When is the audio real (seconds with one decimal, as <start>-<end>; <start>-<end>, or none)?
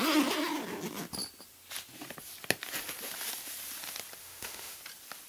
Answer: 0.0-4.2; 4.8-5.3